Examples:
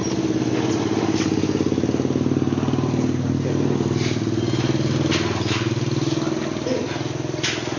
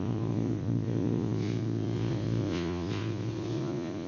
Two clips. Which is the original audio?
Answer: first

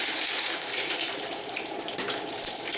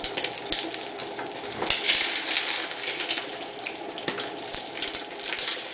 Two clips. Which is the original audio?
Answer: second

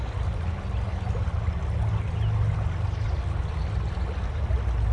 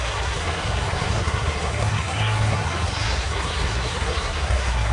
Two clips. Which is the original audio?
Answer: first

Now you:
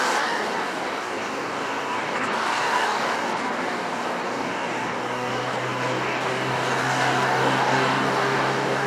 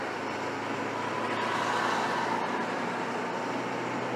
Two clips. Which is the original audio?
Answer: second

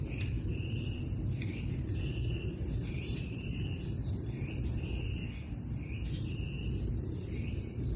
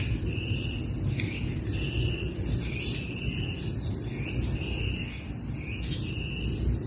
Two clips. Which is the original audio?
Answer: second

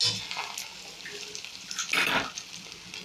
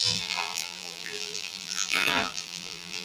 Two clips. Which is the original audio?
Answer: first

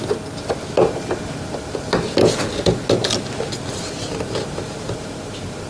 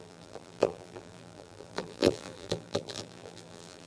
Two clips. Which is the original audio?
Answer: first